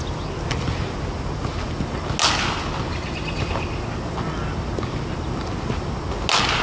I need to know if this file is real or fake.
real